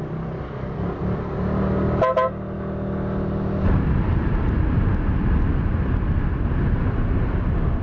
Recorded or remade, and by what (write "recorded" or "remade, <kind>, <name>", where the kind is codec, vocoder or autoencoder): recorded